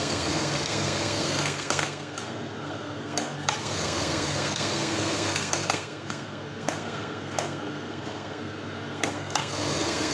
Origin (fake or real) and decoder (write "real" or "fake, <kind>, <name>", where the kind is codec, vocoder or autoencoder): fake, codec, SNAC